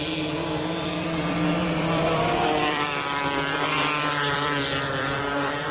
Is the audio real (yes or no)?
no